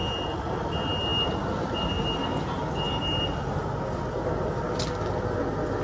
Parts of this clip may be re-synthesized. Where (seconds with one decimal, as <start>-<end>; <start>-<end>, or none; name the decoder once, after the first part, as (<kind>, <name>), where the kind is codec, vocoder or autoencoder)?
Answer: none